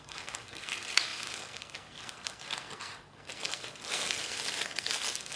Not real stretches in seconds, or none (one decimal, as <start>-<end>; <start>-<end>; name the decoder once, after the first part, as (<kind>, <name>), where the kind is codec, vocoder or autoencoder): 0.0-5.4 (codec, SNAC)